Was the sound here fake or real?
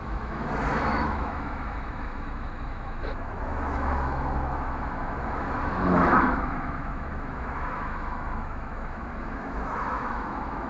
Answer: fake